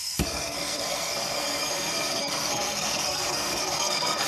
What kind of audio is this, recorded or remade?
remade